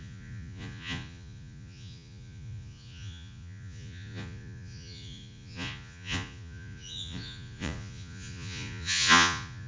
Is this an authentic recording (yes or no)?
no